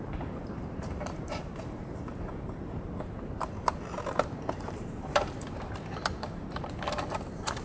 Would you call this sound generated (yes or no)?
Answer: yes